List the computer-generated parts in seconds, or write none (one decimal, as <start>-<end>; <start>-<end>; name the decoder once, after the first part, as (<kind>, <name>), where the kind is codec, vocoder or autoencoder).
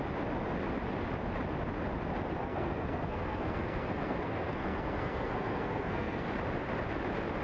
2.4-6.3 (codec, SNAC)